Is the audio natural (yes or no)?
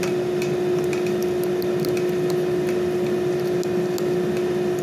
yes